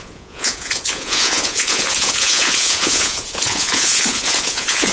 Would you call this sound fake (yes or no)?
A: yes